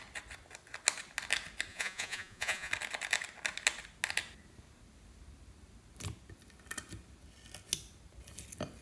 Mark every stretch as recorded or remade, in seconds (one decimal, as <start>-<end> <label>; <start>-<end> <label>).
0.0-1.7 recorded; 1.7-2.7 remade; 2.7-8.8 recorded